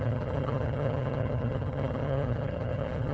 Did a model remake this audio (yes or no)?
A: yes